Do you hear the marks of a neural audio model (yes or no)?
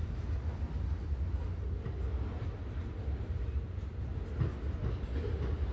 no